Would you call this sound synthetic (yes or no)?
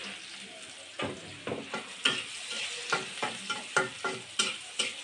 no